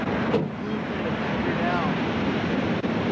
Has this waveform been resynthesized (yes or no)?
no